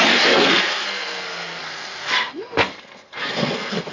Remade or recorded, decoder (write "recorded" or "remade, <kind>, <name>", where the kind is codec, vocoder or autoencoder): remade, codec, SNAC